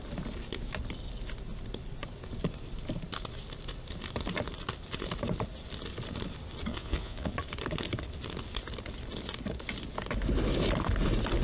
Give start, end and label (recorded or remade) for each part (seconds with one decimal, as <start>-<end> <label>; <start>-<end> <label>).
0.0-6.7 recorded; 6.7-7.3 remade; 7.3-11.4 recorded